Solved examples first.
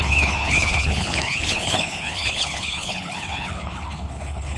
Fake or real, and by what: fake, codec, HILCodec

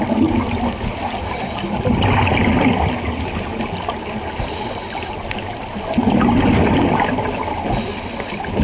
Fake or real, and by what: real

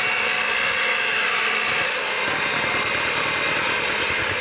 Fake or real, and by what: real